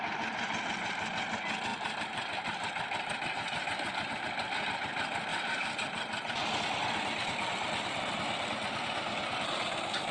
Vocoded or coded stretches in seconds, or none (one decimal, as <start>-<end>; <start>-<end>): 1.7-4.1; 5.3-6.6